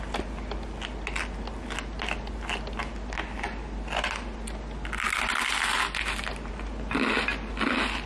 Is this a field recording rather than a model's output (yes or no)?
yes